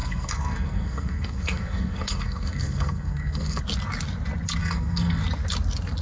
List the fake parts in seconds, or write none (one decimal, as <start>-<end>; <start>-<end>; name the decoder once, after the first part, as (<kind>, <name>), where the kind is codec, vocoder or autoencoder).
0.0-3.6 (codec, SNAC); 4.6-5.2